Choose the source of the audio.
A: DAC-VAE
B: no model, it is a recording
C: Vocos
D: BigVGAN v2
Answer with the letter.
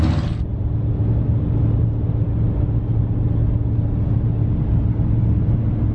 B